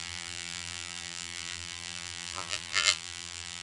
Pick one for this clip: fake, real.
fake